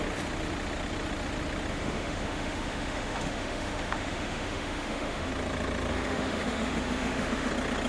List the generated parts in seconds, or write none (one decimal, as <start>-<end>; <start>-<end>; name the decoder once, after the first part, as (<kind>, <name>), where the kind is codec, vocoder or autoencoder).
1.7-5.3 (autoencoder, DAC-VAE); 5.9-7.5